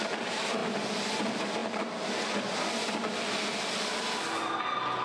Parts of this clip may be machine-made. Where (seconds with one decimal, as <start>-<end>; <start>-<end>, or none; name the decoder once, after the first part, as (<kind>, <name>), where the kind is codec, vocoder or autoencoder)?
none